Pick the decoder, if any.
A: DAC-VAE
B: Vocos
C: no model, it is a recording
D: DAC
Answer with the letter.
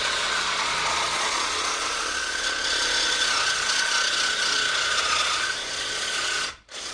B